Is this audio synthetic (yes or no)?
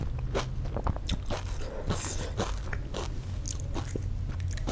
no